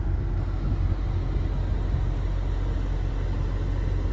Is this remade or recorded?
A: recorded